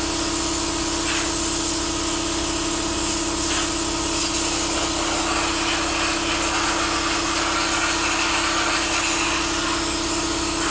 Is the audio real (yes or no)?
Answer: yes